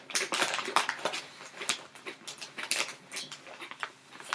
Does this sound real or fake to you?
real